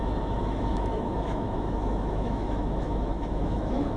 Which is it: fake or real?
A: fake